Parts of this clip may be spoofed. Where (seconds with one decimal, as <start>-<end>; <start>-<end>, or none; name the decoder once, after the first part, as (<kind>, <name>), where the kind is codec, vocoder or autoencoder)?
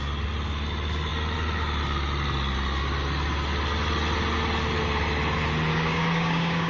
5.7-6.7 (codec, DAC)